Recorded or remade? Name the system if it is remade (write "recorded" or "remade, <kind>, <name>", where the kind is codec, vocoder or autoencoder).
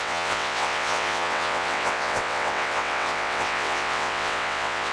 remade, vocoder, WaveNeXt